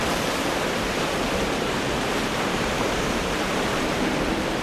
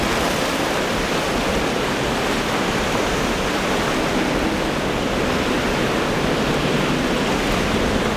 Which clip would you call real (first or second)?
second